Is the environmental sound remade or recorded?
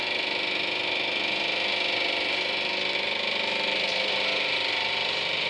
recorded